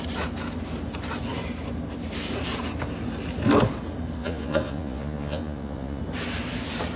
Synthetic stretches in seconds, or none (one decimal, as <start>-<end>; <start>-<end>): 4.2-6.0